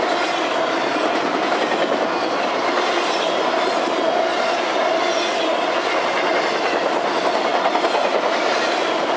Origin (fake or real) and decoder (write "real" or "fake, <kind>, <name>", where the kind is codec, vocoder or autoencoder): real